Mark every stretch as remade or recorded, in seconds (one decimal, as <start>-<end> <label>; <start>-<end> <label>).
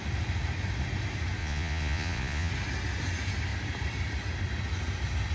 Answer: 0.0-1.4 recorded; 1.4-2.5 remade; 2.5-5.3 recorded